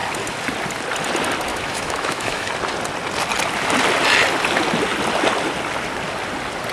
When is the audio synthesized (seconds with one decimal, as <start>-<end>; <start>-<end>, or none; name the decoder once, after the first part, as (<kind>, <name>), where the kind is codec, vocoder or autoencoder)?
1.5-2.5 (autoencoder, DAC-VAE)